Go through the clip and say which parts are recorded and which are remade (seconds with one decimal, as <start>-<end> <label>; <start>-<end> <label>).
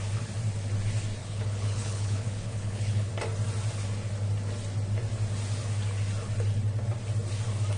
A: 0.0-1.2 recorded; 1.2-3.1 remade; 3.1-7.8 recorded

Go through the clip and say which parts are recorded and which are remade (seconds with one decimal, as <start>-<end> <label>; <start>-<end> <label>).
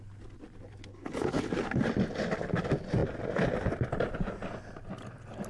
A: 0.0-0.9 recorded; 0.9-1.5 remade; 1.5-5.5 recorded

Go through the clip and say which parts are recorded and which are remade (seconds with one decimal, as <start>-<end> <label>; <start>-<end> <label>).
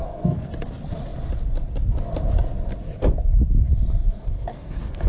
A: 0.0-0.5 remade; 0.5-4.0 recorded; 4.0-5.1 remade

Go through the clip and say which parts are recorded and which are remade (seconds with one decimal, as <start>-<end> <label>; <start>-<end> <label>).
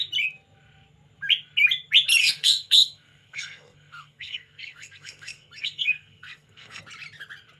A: 0.0-2.2 recorded; 2.2-6.8 remade; 6.8-7.6 recorded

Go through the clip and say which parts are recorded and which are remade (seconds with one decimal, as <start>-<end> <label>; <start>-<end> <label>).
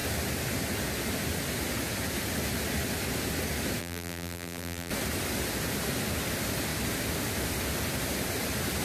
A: 0.0-3.8 recorded; 3.8-4.9 remade; 4.9-8.8 recorded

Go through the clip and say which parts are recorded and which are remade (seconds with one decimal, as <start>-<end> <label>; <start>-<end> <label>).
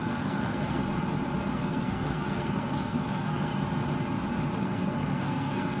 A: 0.0-0.8 remade; 0.8-1.5 recorded; 1.5-3.5 remade; 3.5-4.6 recorded; 4.6-5.8 remade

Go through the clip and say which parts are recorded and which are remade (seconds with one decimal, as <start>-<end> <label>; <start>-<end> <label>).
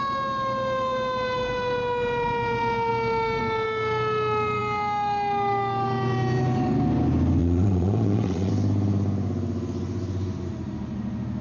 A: 0.0-7.4 recorded; 7.4-8.5 remade; 8.5-11.4 recorded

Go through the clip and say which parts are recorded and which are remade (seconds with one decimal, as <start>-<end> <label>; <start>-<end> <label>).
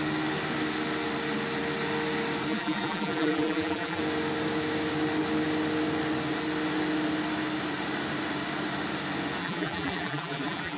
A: 0.0-2.5 recorded; 2.5-4.0 remade; 4.0-9.4 recorded; 9.4-10.8 remade